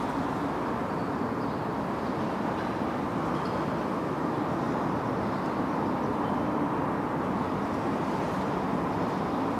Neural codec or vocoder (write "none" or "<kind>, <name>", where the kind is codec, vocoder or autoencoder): none